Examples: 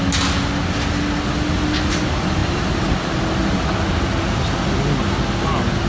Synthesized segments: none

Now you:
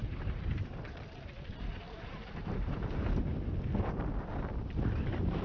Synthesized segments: 0.0-3.2 (vocoder, BigVGAN v2); 4.3-5.4

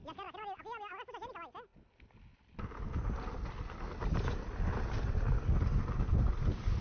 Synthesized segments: none

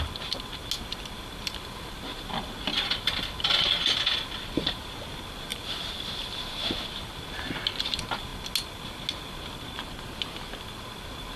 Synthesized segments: 5.5-6.6 (vocoder, BigVGAN v2)

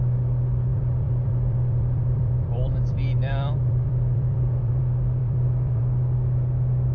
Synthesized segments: 0.7-4.8 (vocoder, BigVGAN v2); 5.2-5.8

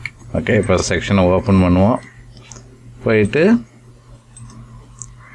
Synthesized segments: none

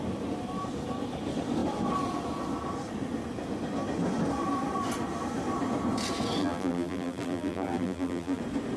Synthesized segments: 6.4-8.4 (vocoder, BigVGAN v2)

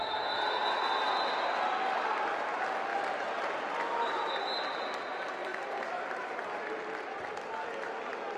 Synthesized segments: none